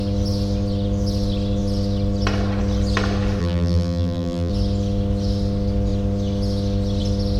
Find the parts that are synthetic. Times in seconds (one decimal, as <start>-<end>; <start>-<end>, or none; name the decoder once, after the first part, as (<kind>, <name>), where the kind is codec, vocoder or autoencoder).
3.4-4.5 (vocoder, BigVGAN v2)